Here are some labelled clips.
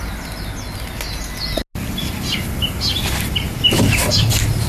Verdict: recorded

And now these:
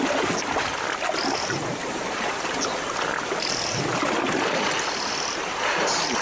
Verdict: recorded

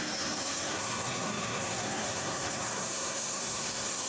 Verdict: remade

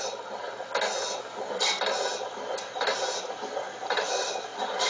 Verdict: recorded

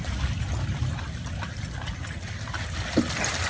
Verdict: recorded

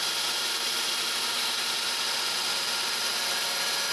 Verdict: recorded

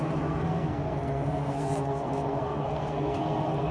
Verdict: remade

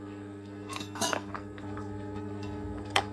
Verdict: remade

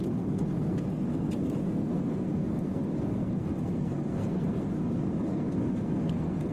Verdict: remade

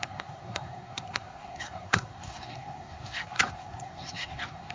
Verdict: remade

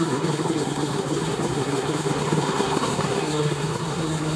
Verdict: remade